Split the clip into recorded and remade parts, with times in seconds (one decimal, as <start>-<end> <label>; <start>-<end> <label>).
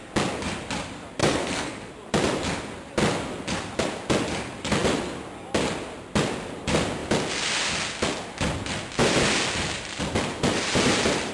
0.0-1.2 recorded; 1.2-1.9 remade; 1.9-11.3 recorded